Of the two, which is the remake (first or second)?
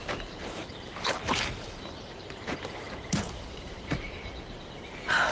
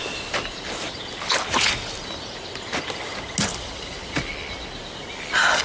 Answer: first